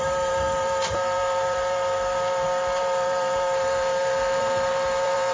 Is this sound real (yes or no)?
no